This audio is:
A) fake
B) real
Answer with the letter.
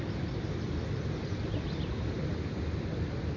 B